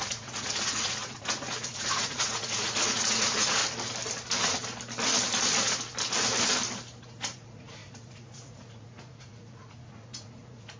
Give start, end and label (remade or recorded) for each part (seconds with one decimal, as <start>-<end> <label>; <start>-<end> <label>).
0.0-3.6 remade; 3.6-7.0 recorded; 7.0-10.8 remade